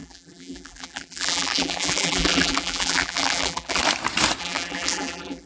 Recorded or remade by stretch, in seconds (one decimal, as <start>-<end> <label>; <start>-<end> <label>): 0.0-3.8 remade; 3.8-4.4 recorded; 4.4-5.5 remade